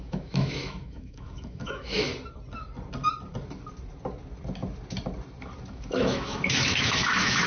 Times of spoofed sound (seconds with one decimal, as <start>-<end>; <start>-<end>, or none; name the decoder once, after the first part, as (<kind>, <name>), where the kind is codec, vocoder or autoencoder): 0.0-2.1 (autoencoder, DAC-VAE); 5.7-7.5